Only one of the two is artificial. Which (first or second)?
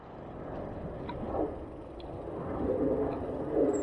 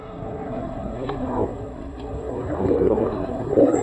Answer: second